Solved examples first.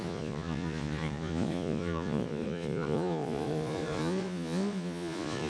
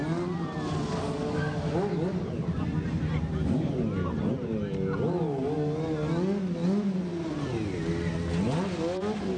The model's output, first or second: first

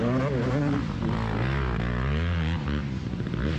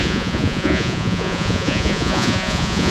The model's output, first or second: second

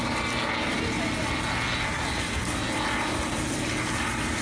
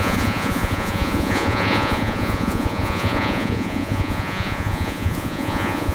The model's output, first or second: second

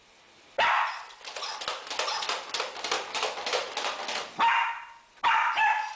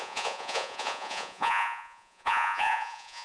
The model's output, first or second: second